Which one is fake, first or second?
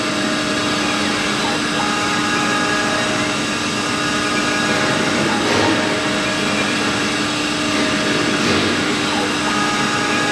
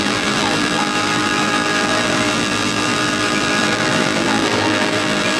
second